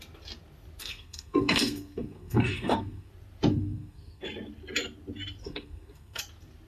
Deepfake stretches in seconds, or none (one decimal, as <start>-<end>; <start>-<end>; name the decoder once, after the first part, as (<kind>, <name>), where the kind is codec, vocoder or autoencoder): 0.8-3.1 (codec, SNAC); 3.5-4.2; 5.4-6.2